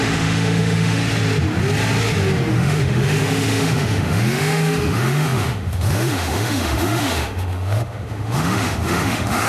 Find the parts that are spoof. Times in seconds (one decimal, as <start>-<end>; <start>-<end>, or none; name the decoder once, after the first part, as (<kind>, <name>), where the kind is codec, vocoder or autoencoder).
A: 0.0-1.0 (autoencoder, DAC-VAE); 2.5-9.5